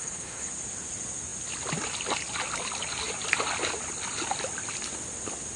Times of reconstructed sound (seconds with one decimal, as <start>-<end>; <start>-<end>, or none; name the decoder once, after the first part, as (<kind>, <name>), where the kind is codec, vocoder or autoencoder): 0.0-0.5 (codec, HILCodec)